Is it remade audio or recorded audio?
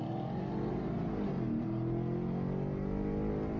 recorded